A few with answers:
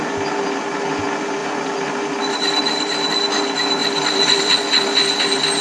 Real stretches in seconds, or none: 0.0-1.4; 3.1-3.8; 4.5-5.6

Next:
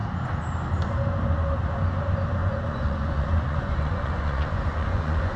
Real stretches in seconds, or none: 0.0-2.4

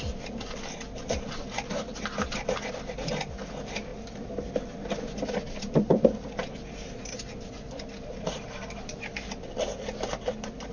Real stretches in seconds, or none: 0.0-10.7

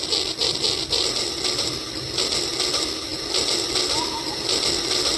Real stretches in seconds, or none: 0.0-5.2

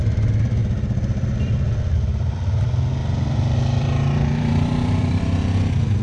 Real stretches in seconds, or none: 0.0-3.0; 5.2-6.0